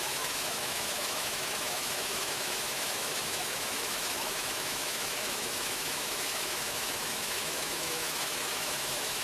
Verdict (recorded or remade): remade